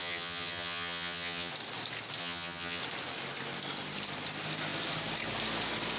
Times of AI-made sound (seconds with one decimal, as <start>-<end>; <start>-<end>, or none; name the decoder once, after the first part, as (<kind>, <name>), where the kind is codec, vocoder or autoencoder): 0.0-1.5 (vocoder, HiFi-GAN); 2.2-2.8